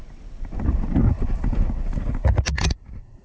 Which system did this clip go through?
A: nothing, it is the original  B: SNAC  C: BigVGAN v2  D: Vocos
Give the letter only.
A